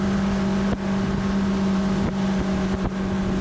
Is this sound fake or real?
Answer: real